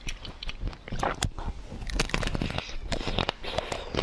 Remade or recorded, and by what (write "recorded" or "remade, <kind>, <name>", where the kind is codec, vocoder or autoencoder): recorded